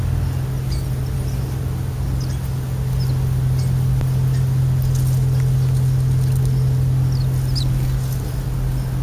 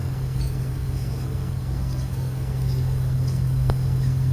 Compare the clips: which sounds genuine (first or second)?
first